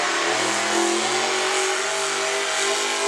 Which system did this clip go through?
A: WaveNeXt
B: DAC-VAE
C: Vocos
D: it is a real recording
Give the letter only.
D